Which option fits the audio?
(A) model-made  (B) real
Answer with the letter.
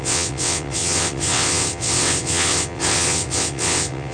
A